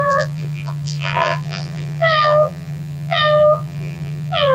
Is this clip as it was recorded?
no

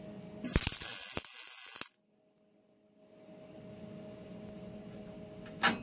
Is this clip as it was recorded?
yes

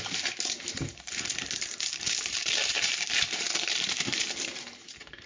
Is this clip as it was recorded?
no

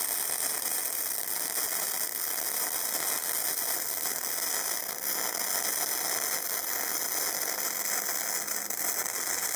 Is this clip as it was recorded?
yes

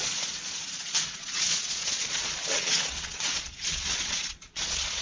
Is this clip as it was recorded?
no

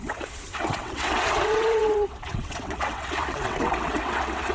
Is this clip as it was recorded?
no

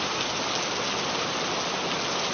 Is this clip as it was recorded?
yes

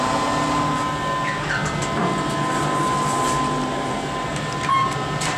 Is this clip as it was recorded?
yes